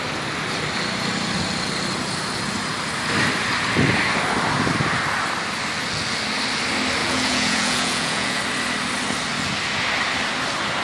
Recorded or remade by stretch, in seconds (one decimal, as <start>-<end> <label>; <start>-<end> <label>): 0.0-7.0 recorded; 7.0-8.4 remade; 8.4-10.8 recorded